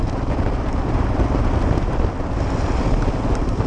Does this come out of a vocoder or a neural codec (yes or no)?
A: no